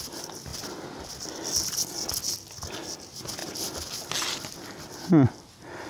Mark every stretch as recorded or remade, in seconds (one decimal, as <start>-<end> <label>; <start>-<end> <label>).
0.0-5.9 recorded